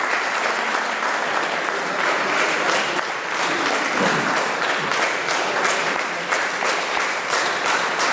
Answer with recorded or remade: remade